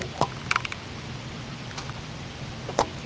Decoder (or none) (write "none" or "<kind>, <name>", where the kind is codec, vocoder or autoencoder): none